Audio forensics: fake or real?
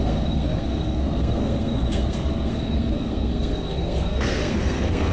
fake